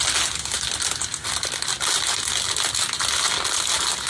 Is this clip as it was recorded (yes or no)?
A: yes